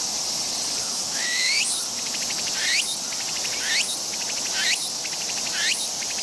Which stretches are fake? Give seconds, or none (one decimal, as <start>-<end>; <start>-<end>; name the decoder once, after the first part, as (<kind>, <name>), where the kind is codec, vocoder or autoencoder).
0.8-1.6 (autoencoder, DAC-VAE)